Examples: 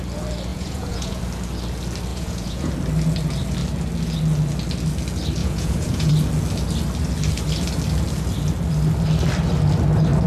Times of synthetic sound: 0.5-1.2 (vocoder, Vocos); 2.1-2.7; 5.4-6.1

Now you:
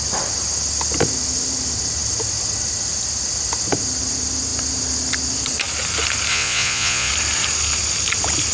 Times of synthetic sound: 6.3-7.1 (vocoder, Vocos)

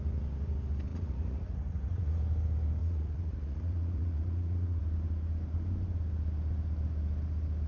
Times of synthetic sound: 0.9-2.2 (vocoder, Vocos); 2.8-4.8

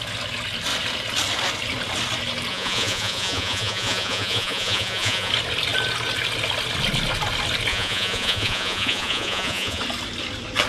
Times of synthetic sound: 2.5-5.3 (vocoder, Vocos); 7.7-9.8

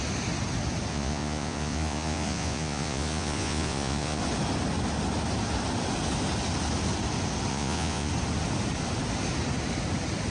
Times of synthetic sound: 0.9-4.2 (vocoder, Vocos); 7.5-8.1